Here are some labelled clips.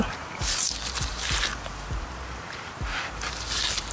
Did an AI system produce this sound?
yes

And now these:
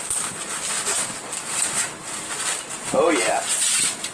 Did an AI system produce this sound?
no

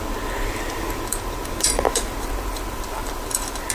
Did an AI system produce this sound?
yes